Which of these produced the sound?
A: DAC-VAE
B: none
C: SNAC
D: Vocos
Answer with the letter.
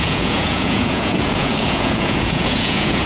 D